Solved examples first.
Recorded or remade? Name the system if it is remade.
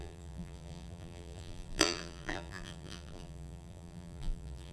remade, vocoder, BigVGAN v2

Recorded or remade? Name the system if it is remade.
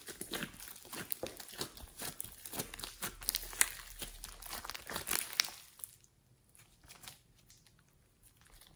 recorded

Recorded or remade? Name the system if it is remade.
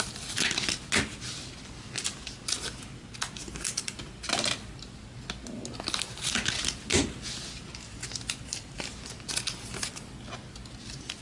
recorded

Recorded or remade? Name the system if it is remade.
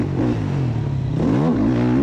recorded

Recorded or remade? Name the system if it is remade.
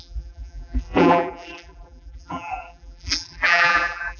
remade, vocoder, BigVGAN v2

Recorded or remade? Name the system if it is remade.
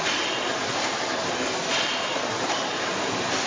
recorded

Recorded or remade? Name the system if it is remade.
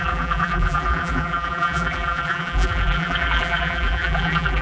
remade, vocoder, BigVGAN v2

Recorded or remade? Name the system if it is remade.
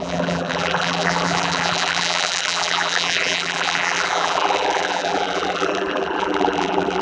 remade, vocoder, BigVGAN v2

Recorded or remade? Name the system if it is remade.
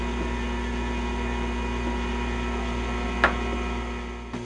recorded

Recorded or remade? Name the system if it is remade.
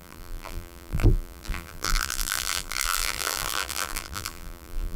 remade, vocoder, BigVGAN v2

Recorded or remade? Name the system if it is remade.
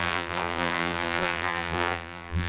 remade, vocoder, BigVGAN v2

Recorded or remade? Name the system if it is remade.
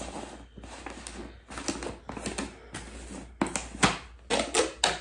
recorded